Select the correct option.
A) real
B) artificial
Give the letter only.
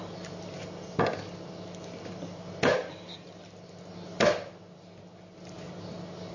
A